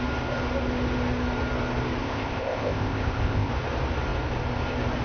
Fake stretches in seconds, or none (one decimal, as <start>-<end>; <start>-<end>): 2.0-3.5